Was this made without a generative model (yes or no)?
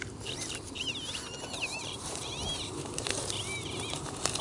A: no